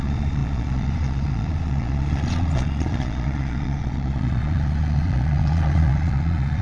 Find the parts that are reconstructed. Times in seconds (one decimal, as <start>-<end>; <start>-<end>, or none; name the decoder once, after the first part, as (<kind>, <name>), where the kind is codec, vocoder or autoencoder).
0.0-6.6 (vocoder, Vocos)